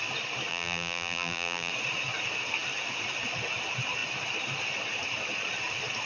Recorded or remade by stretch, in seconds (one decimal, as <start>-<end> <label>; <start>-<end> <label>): 0.0-0.5 recorded; 0.5-1.7 remade; 1.7-6.1 recorded